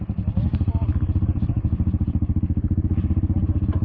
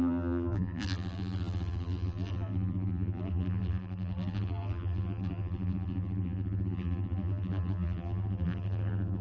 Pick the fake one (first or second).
second